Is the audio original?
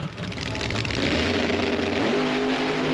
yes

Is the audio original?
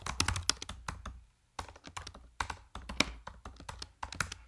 yes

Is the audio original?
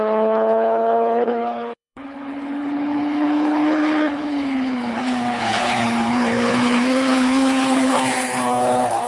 no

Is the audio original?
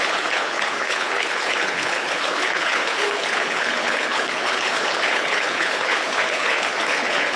no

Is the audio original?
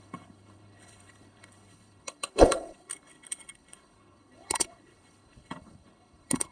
no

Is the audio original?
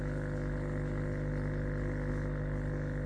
no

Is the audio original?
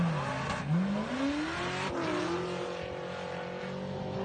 yes